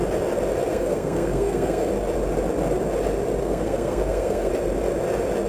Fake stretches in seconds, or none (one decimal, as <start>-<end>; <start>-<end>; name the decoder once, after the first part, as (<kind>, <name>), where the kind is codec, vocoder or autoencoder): 0.7-1.9 (codec, SNAC); 3.4-4.5